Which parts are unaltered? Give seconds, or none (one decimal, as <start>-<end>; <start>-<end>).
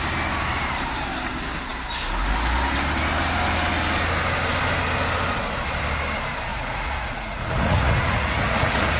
0.0-6.5